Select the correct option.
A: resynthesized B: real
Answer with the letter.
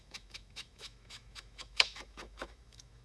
A